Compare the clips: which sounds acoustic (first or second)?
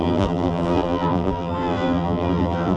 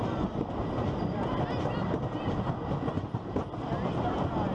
second